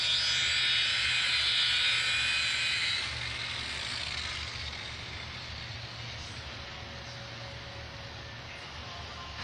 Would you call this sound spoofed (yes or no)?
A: no